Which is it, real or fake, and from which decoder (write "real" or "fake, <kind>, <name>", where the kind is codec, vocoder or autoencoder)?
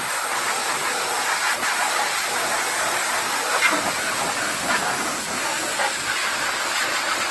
real